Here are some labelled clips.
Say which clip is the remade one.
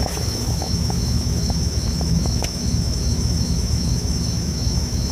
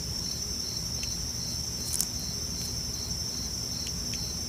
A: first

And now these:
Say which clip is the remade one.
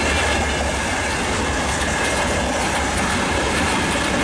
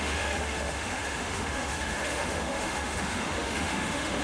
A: second